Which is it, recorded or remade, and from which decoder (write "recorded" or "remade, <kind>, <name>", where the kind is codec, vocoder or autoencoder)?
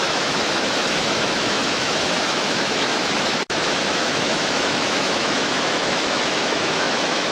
remade, autoencoder, DAC-VAE